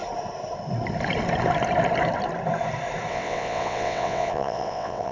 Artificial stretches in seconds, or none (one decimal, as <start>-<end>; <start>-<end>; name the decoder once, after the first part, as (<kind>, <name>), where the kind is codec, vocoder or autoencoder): 3.1-5.1 (vocoder, WaveNeXt)